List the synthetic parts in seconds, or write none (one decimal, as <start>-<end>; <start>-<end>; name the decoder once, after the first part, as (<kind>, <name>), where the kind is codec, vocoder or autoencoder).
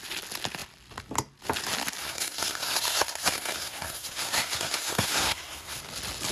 2.0-5.8 (codec, SNAC)